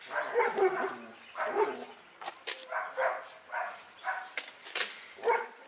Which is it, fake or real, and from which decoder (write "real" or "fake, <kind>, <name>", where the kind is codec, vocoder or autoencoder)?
real